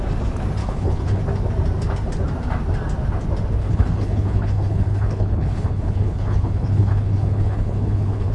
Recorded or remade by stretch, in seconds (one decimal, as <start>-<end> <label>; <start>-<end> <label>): 0.0-0.6 recorded; 0.6-1.2 remade; 1.2-3.6 recorded; 3.6-8.3 remade

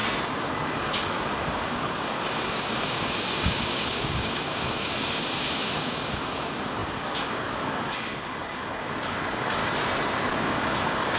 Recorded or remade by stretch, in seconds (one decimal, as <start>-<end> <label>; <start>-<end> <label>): 0.0-0.5 recorded; 0.5-9.6 remade; 9.6-10.3 recorded; 10.3-11.2 remade

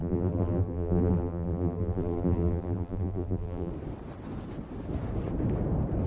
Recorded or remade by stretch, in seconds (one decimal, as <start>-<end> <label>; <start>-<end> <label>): 0.0-3.7 remade; 3.7-6.1 recorded

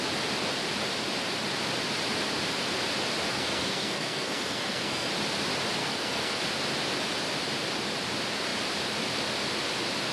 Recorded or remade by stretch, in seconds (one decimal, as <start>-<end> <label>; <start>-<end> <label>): 0.0-3.3 recorded; 3.3-5.1 remade; 5.1-5.8 recorded; 5.8-6.4 remade; 6.4-10.1 recorded

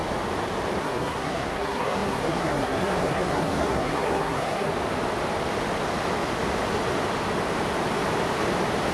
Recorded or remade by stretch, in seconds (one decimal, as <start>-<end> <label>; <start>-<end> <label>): 0.0-0.8 recorded; 0.8-4.7 remade; 4.7-8.9 recorded